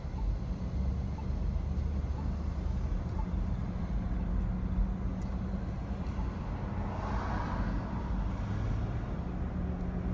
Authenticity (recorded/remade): recorded